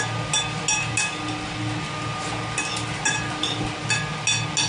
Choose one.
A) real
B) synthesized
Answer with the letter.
A